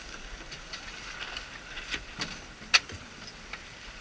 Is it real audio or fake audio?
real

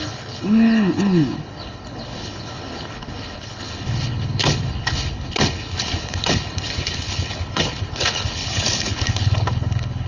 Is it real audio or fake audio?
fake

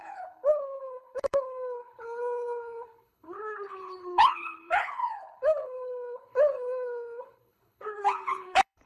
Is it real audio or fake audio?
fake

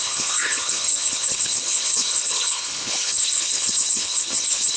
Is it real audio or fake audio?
fake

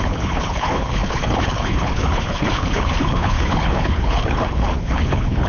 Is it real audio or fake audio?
fake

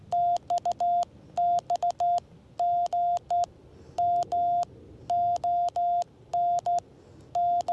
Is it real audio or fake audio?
real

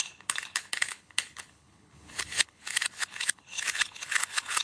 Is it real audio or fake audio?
fake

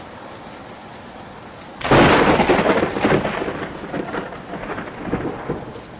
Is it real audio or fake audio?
real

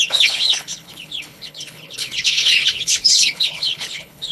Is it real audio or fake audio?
fake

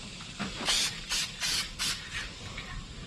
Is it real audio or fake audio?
real